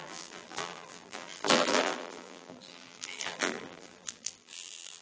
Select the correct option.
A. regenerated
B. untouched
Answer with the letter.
A